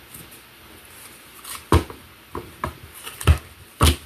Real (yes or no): yes